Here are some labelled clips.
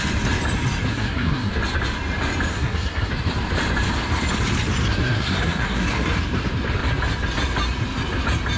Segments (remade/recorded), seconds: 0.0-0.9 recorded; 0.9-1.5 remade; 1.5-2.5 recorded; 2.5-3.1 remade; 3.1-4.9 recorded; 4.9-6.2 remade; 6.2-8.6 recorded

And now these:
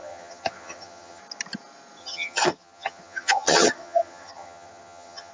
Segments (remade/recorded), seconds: 0.0-1.2 remade; 1.2-2.0 recorded; 2.0-5.3 remade